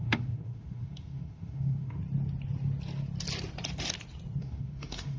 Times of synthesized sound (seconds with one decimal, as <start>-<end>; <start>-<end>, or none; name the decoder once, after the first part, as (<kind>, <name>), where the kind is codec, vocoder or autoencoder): 0.0-2.0 (autoencoder, DAC-VAE); 4.4-5.2